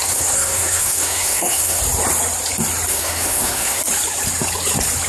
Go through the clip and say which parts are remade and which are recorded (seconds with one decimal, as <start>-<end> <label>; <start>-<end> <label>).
0.0-1.8 remade; 1.8-2.9 recorded; 2.9-3.8 remade; 3.8-5.1 recorded